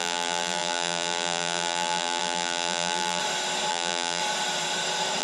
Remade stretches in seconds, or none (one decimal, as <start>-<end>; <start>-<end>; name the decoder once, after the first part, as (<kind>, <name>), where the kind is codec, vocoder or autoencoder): 0.0-3.2 (vocoder, BigVGAN v2); 3.7-4.2